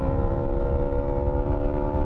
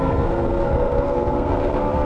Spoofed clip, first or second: second